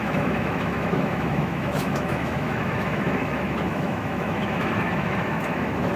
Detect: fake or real fake